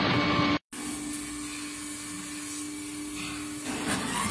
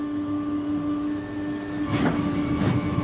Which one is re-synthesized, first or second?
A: second